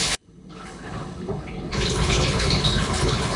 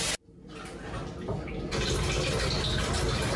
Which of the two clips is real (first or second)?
second